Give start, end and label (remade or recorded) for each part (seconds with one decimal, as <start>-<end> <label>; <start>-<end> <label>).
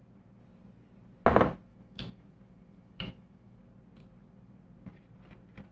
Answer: 0.0-1.7 recorded; 1.7-3.6 remade; 3.6-5.7 recorded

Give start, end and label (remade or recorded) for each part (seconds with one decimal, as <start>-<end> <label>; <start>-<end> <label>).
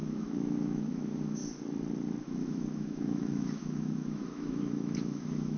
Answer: 0.0-1.4 remade; 1.4-2.2 recorded; 2.2-5.6 remade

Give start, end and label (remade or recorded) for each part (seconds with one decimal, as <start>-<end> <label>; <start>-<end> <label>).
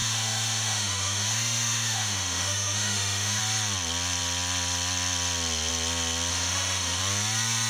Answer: 0.0-3.4 remade; 3.4-6.3 recorded; 6.3-7.0 remade; 7.0-7.7 recorded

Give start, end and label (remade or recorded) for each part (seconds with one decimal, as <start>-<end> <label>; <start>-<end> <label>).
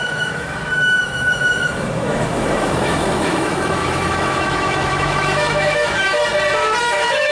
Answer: 0.0-6.2 remade; 6.2-6.8 recorded; 6.8-7.3 remade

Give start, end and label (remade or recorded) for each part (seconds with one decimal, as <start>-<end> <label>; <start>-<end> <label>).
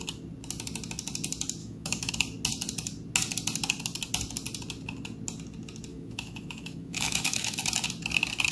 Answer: 0.0-1.6 recorded; 1.6-2.1 remade; 2.1-5.9 recorded; 5.9-7.6 remade; 7.6-8.5 recorded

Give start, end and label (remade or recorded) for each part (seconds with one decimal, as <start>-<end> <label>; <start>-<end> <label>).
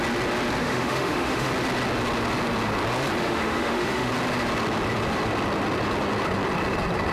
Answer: 0.0-0.6 recorded; 0.6-1.5 remade; 1.5-3.2 recorded; 3.2-4.1 remade; 4.1-7.1 recorded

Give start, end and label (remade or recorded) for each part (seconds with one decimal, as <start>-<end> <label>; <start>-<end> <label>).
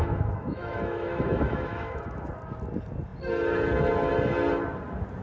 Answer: 0.0-2.3 remade; 2.3-5.2 recorded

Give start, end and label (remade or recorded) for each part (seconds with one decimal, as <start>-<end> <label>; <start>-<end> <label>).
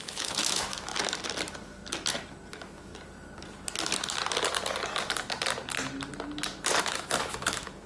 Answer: 0.0-0.9 remade; 0.9-2.5 recorded; 2.5-2.9 remade; 2.9-6.8 recorded; 6.8-7.9 remade